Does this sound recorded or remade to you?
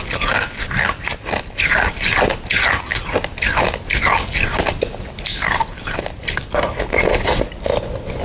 recorded